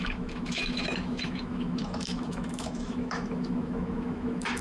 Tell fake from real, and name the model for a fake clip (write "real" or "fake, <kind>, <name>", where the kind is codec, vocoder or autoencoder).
fake, autoencoder, DAC-VAE